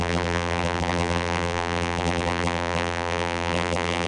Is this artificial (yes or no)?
yes